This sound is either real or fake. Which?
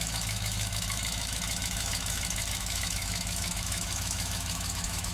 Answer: fake